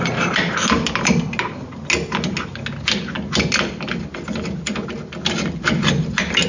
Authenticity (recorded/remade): recorded